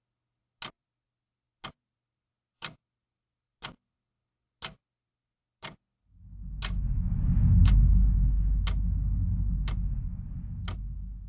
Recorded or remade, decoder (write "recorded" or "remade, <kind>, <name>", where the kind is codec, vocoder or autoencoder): recorded